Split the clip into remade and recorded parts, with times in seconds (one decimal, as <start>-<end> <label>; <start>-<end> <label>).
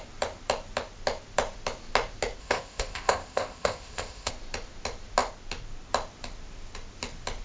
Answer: 0.0-2.4 recorded; 2.4-4.3 remade; 4.3-7.4 recorded